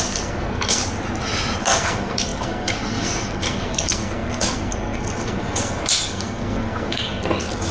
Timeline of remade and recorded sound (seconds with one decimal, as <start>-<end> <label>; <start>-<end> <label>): 0.0-0.8 remade; 0.8-1.6 recorded; 1.6-7.7 remade